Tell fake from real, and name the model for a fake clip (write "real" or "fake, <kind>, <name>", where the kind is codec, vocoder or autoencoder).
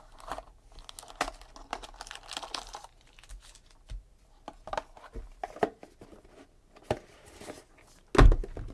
real